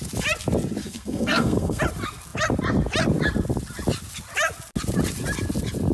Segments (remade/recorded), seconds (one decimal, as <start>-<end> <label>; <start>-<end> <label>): 0.0-0.8 recorded; 0.8-1.8 remade; 1.8-5.9 recorded